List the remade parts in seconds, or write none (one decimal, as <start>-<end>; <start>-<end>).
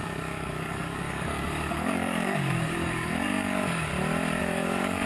0.0-3.9; 4.4-5.1